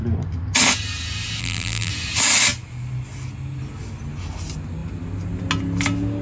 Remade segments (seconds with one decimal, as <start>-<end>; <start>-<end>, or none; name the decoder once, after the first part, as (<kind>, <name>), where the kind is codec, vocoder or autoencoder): 1.4-1.9 (vocoder, BigVGAN v2)